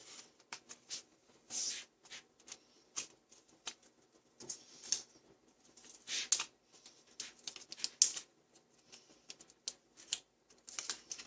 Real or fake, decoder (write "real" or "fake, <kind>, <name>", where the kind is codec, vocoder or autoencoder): real